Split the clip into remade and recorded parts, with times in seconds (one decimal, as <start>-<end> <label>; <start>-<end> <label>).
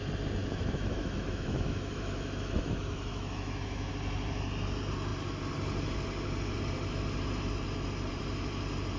0.0-0.4 recorded; 0.4-3.9 remade; 3.9-9.0 recorded